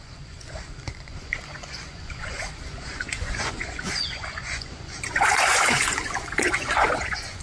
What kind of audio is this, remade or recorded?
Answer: remade